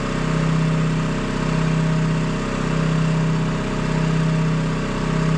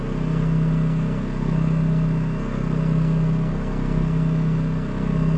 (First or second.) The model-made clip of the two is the second